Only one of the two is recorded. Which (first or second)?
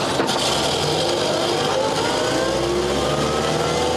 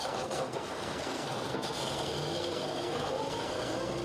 first